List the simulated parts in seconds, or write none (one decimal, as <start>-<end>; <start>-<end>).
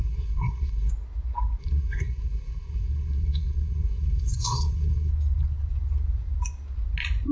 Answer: 0.0-0.9; 1.6-5.1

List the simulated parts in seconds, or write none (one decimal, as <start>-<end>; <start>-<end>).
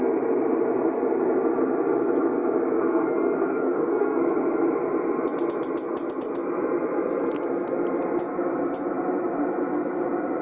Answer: 2.7-4.2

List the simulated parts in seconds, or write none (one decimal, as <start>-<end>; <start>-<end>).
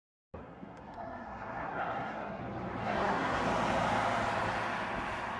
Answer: 0.4-2.4; 2.8-3.4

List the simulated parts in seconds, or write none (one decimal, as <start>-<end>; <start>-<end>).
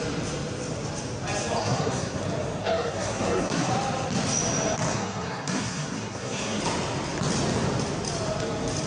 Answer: 1.6-2.2; 2.6-3.7; 4.9-6.6